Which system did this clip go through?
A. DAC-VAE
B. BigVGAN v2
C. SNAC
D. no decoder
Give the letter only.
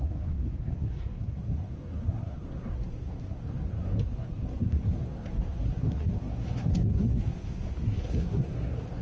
C